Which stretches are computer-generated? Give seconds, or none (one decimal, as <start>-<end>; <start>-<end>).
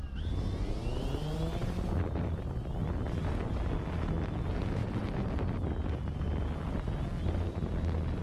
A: none